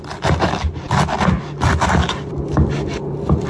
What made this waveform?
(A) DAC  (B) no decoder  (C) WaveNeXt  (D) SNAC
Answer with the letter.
B